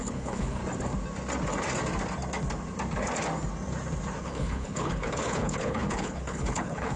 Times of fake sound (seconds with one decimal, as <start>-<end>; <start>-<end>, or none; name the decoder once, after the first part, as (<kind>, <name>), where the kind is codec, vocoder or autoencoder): 0.0-0.6 (codec, HILCodec); 4.2-7.0